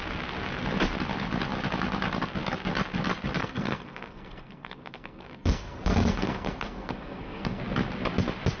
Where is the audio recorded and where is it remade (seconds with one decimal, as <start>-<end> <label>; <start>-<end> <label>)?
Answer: 0.0-3.4 recorded; 3.4-7.6 remade; 7.6-8.6 recorded